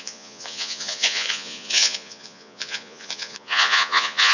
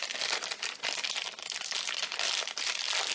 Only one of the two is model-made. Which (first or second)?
first